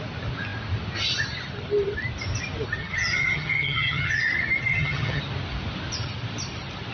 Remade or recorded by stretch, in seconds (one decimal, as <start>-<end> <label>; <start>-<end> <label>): 0.0-2.8 recorded; 2.8-4.2 remade; 4.2-4.7 recorded; 4.7-5.2 remade; 5.2-6.9 recorded